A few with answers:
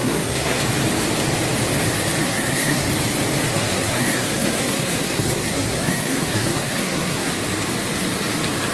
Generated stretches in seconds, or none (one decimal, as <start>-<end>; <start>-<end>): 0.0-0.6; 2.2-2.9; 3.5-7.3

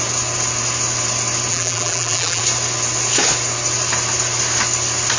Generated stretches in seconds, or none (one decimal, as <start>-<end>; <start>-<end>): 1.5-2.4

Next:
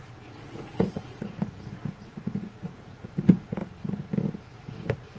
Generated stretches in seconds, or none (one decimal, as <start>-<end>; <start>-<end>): 0.0-3.6; 4.4-5.2

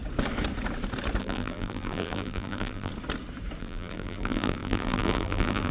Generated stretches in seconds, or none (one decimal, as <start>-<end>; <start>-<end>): 1.2-2.9; 3.6-5.7